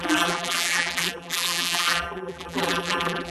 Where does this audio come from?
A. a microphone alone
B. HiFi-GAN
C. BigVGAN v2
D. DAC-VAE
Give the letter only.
C